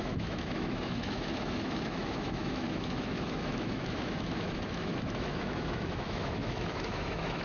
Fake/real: fake